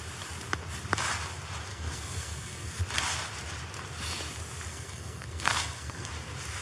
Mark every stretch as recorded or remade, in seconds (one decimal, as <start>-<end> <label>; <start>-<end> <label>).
0.0-1.7 recorded; 1.7-2.8 remade; 2.8-4.7 recorded; 4.7-6.1 remade; 6.1-6.6 recorded

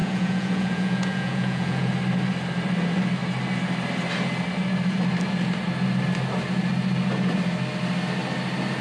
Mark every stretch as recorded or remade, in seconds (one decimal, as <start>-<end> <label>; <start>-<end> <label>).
0.0-1.9 remade; 1.9-8.8 recorded

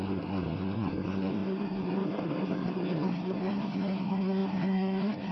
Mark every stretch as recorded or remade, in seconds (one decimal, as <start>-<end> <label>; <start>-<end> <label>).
0.0-5.3 remade